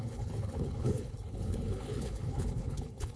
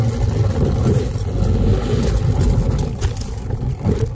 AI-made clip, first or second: first